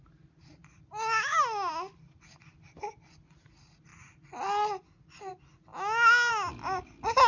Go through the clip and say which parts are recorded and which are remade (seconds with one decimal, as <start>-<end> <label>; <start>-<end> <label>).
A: 0.0-7.3 recorded